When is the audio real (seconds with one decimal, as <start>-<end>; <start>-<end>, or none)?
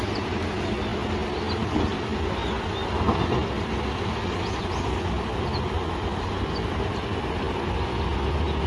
0.0-8.7